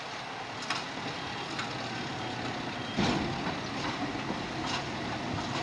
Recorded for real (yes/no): yes